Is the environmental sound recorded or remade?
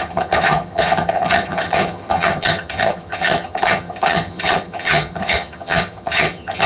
remade